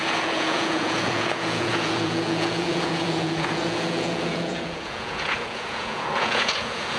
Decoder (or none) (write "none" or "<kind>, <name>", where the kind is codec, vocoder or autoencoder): vocoder, Vocos